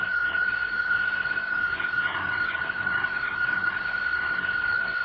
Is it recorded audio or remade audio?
remade